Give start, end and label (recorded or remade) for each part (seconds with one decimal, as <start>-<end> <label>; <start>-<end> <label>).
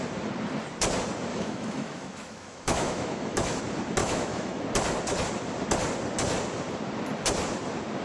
0.0-1.3 recorded; 1.3-3.6 remade; 3.6-4.0 recorded; 4.0-4.6 remade; 4.6-8.0 recorded